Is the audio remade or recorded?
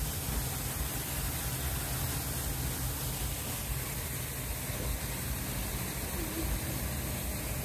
recorded